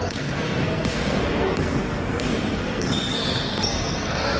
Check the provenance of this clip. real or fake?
fake